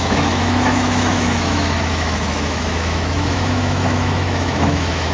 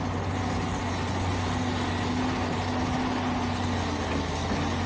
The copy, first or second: first